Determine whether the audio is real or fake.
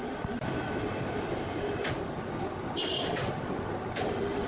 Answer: real